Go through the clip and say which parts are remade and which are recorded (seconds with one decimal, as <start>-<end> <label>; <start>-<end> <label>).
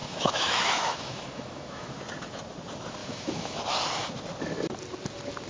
0.0-2.0 remade; 2.0-3.0 recorded; 3.0-3.6 remade; 3.6-5.5 recorded